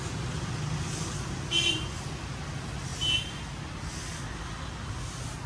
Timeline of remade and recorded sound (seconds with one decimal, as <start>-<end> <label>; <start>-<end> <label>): 0.0-5.5 recorded